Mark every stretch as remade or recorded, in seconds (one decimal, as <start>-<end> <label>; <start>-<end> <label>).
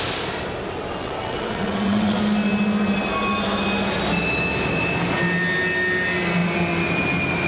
0.0-1.0 recorded; 1.0-2.2 remade; 2.2-7.5 recorded